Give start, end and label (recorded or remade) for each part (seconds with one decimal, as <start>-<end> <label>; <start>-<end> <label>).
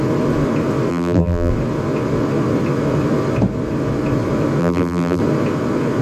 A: 0.0-0.9 recorded; 0.9-1.5 remade; 1.5-4.6 recorded; 4.6-5.2 remade; 5.2-6.0 recorded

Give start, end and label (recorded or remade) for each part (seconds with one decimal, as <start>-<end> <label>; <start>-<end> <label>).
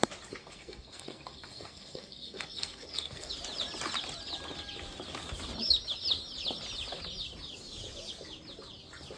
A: 0.0-0.4 recorded; 0.4-3.3 remade; 3.3-9.2 recorded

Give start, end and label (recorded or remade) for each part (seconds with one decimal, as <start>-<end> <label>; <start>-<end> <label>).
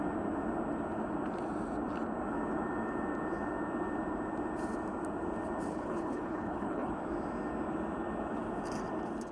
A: 0.0-5.7 recorded; 5.7-6.9 remade; 6.9-9.3 recorded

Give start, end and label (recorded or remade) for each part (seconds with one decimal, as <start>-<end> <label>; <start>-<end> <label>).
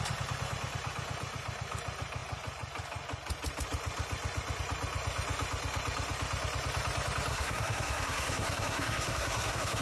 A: 0.0-7.3 recorded; 7.3-9.8 remade